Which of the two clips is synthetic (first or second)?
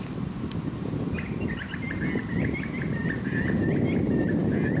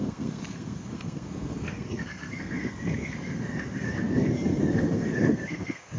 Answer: second